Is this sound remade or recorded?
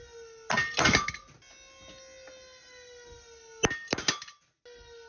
recorded